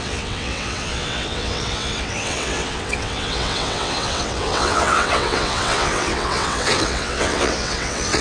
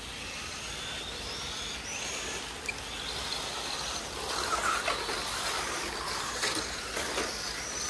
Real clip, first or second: second